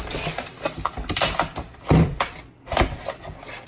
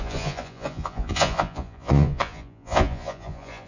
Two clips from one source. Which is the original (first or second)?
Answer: first